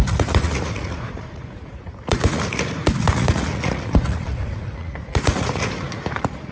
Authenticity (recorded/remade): remade